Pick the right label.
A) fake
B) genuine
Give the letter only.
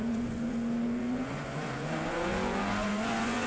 A